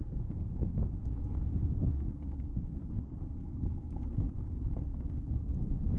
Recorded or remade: remade